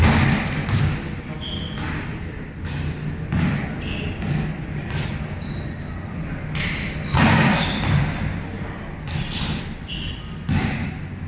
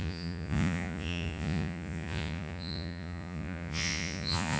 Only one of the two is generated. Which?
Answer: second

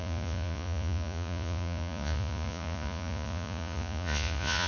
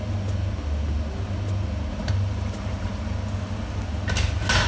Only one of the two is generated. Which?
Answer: first